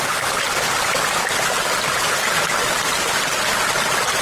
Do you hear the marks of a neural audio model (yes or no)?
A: no